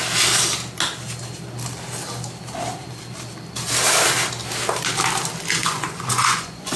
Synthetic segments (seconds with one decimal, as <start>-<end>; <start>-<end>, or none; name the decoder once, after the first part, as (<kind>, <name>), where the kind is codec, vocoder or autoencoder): 5.6-6.8 (vocoder, Vocos)